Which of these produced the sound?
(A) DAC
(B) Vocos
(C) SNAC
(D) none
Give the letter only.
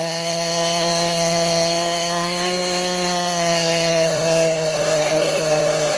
C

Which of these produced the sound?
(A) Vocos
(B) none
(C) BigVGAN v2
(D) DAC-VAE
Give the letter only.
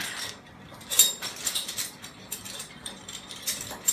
C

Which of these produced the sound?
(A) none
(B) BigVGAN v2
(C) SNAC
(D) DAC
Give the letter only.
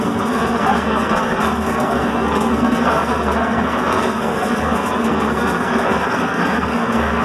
C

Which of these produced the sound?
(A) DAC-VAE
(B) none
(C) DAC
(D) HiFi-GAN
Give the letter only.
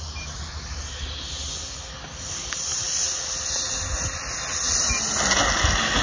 B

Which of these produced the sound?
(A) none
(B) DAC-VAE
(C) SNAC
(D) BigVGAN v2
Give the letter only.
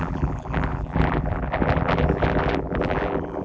D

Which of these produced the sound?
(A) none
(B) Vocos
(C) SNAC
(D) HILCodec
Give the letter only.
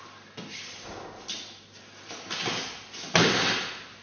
A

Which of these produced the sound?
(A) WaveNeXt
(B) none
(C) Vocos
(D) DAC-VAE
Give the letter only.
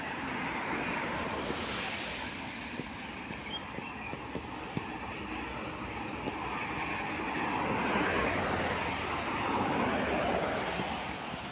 B